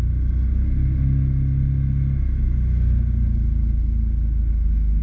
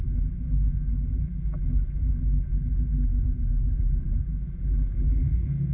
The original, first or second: first